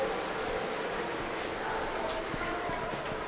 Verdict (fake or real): real